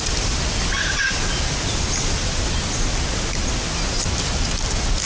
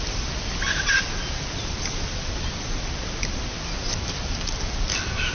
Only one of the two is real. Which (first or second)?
first